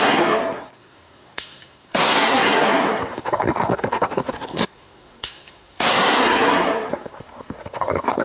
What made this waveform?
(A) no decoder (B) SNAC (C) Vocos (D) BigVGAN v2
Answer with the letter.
B